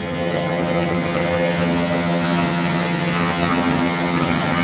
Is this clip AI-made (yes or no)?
yes